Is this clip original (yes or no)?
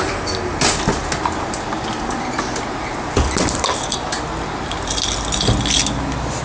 yes